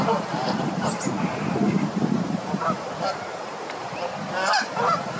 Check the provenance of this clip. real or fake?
fake